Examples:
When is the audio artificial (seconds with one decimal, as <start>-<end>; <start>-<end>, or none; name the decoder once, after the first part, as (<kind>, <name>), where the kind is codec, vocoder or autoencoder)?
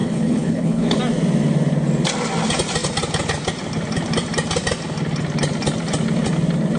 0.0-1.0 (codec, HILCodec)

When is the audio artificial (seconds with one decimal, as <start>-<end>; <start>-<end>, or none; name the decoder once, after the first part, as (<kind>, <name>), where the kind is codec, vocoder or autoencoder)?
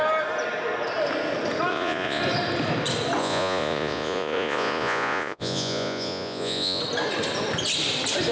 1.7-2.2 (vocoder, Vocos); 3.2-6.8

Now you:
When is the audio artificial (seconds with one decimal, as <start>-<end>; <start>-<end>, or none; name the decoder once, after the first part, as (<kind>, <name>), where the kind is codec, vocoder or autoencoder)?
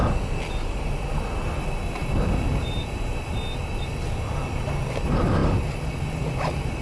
none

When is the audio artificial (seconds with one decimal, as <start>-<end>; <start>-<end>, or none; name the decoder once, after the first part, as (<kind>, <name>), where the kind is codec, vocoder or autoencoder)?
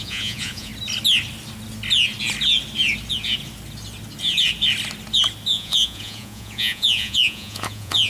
0.0-0.7 (vocoder, Vocos); 5.5-8.1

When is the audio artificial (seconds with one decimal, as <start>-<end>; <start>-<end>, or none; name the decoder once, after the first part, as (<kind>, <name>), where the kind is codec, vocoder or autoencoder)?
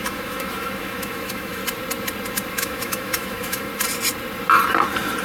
0.0-1.6 (autoencoder, DAC-VAE); 2.5-3.7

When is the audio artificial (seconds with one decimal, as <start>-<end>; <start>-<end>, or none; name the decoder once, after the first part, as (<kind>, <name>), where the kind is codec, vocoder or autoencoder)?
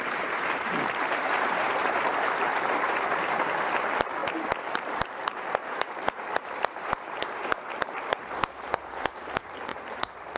0.0-4.2 (vocoder, BigVGAN v2); 4.7-10.4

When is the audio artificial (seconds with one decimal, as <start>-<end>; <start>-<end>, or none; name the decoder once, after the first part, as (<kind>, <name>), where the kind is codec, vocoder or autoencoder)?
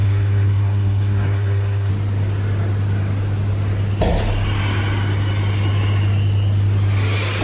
0.0-1.9 (codec, SNAC)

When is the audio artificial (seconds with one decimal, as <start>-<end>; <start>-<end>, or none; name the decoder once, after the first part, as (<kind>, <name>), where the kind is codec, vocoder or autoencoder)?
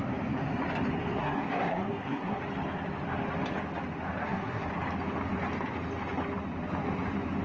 1.2-2.4 (codec, SNAC); 4.2-4.7